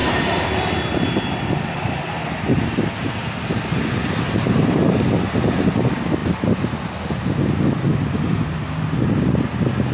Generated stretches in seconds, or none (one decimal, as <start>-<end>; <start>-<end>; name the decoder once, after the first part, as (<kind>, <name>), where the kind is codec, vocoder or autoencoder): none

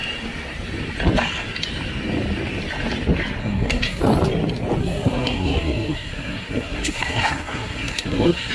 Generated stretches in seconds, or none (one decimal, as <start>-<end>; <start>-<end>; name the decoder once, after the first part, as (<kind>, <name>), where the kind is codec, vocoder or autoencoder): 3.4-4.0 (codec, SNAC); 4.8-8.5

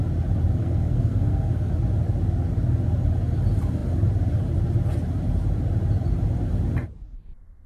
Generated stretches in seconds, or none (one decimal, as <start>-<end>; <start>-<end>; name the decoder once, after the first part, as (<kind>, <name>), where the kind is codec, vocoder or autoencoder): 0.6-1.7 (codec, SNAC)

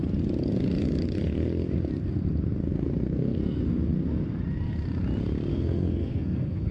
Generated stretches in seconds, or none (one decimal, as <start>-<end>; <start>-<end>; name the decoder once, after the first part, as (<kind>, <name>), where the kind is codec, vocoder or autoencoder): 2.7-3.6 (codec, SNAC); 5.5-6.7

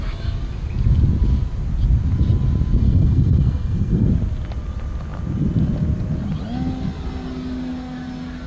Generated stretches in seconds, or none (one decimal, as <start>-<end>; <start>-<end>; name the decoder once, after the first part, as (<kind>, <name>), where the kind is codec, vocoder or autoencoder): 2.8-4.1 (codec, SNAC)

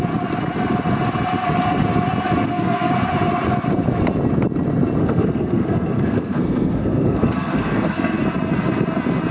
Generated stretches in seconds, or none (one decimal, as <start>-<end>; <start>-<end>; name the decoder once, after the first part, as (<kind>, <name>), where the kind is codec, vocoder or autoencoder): 2.4-2.9 (codec, SNAC); 5.0-8.2

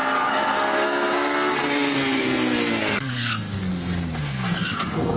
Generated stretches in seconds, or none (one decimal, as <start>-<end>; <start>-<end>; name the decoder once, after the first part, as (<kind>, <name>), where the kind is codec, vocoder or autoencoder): 0.0-3.7 (codec, SNAC); 4.2-5.2